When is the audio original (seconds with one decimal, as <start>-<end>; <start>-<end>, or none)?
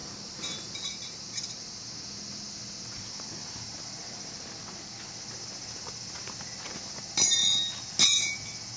1.9-8.8